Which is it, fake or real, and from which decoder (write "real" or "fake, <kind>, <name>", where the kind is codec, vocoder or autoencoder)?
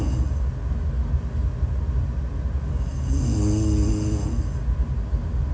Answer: real